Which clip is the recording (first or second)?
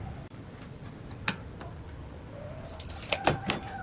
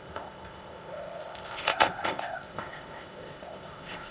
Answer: first